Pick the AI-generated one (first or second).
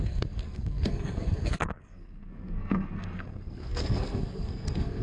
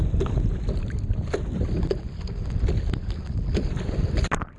first